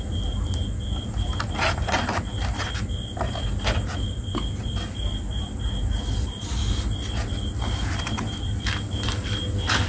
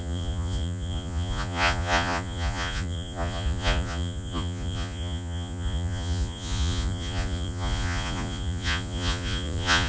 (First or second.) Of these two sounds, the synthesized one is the second